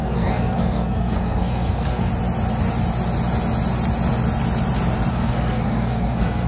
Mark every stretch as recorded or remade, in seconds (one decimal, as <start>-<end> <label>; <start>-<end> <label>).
0.0-2.1 remade; 2.1-5.1 recorded; 5.1-6.5 remade